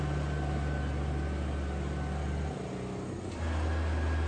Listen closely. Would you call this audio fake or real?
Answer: real